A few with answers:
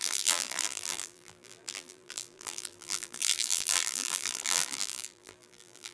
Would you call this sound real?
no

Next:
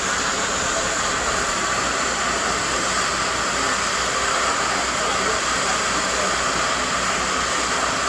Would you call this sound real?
yes